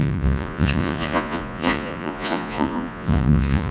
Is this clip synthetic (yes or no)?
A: yes